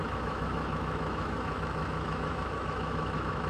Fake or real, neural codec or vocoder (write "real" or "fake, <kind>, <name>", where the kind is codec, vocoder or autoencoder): fake, autoencoder, DAC-VAE